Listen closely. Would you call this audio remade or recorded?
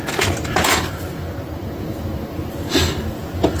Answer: recorded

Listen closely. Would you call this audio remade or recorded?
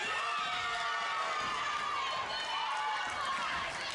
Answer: recorded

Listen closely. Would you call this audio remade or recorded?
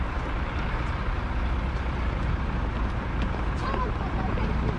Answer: remade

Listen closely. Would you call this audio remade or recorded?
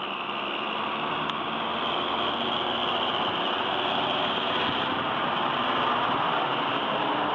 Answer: remade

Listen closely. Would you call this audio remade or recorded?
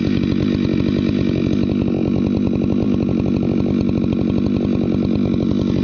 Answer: recorded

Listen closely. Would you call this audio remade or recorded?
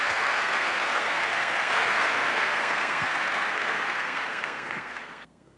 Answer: remade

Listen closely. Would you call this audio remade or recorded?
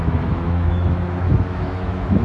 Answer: remade